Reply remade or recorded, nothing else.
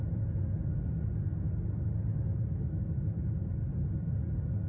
recorded